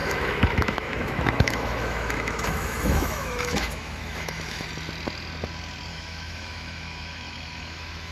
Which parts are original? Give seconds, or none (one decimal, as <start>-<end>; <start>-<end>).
4.7-5.9